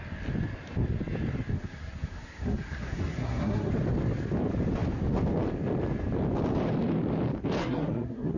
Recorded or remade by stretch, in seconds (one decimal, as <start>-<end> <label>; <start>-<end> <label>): 0.0-1.5 recorded; 1.5-3.7 remade; 3.7-7.6 recorded; 7.6-8.4 remade